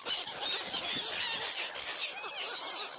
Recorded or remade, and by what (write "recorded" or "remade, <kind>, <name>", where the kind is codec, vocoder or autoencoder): recorded